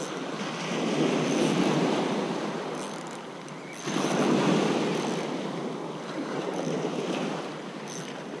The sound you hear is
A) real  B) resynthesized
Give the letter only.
A